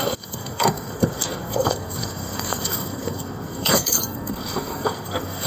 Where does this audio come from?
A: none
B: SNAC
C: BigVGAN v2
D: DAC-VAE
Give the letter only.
B